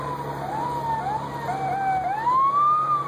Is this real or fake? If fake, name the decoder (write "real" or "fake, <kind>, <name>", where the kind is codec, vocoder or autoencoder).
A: real